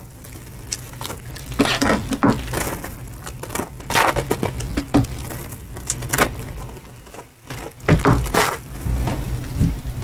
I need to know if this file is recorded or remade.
recorded